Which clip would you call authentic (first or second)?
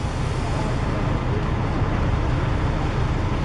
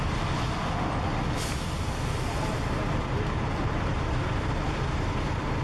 first